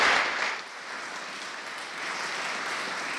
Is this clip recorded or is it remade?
recorded